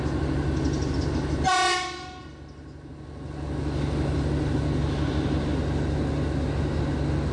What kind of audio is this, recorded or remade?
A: recorded